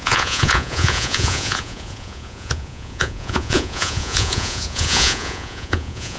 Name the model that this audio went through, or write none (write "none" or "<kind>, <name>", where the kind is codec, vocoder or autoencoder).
vocoder, Vocos